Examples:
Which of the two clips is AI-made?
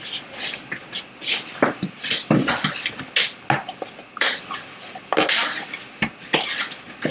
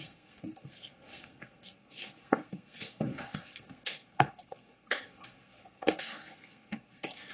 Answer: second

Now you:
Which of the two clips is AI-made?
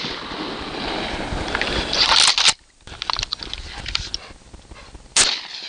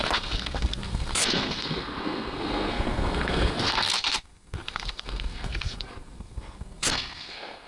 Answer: second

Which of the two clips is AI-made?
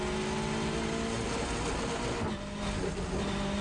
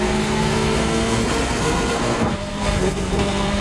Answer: second